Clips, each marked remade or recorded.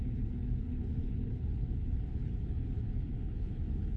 remade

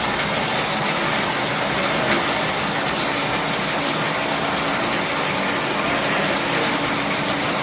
recorded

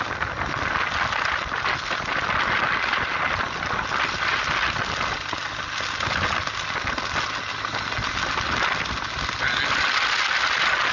recorded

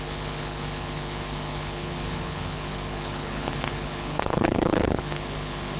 remade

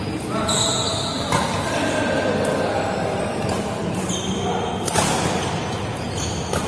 recorded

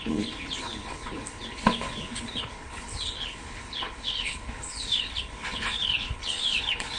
remade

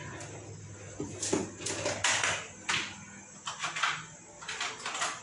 recorded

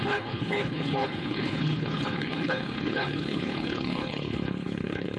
remade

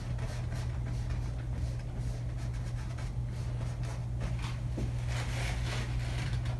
recorded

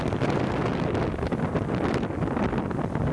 recorded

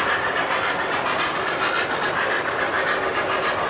recorded